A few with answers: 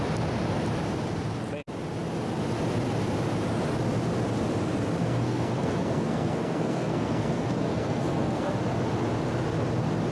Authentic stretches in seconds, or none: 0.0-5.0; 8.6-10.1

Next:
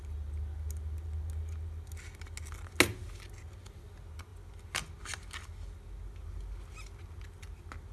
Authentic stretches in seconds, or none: 0.0-7.9